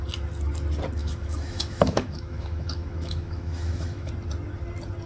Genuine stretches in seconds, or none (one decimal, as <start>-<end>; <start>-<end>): 0.0-1.0; 4.1-5.1

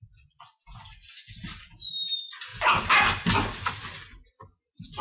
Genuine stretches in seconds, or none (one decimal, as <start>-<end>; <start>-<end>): 0.0-5.0

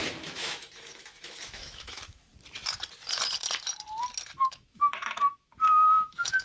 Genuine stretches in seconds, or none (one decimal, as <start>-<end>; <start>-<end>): 2.3-4.4

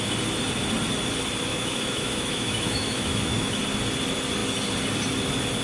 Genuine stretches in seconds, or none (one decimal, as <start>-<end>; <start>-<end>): 0.0-1.5; 3.6-5.6

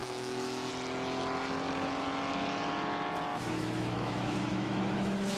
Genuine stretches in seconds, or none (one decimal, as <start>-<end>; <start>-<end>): 0.7-3.3

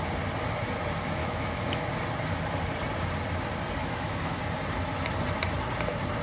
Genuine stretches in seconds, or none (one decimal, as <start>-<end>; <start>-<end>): 0.0-1.2; 1.9-3.8; 4.4-6.2

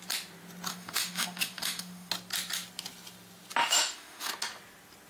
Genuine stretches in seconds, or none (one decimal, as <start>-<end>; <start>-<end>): 0.0-0.7; 2.1-3.6; 4.3-5.1

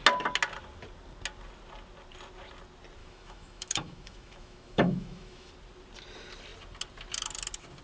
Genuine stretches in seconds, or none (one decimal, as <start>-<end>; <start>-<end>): 0.0-3.0; 5.5-7.8